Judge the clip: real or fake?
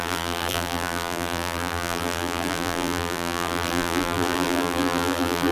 fake